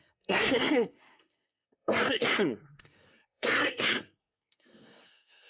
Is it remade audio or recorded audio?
remade